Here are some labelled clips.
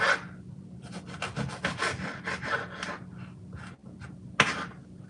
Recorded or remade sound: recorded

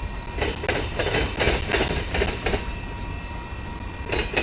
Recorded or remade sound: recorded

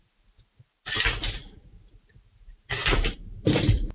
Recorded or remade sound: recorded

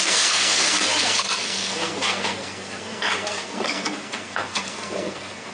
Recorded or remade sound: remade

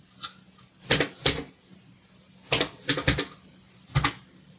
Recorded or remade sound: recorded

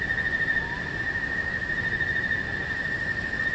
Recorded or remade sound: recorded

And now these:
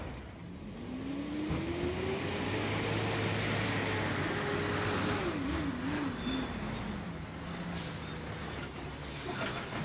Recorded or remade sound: recorded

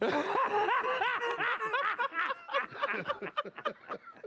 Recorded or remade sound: recorded